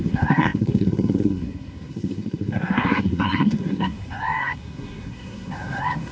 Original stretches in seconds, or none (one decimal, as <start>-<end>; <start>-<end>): none